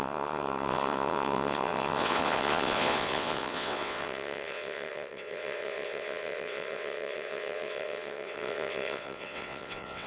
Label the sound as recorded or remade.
remade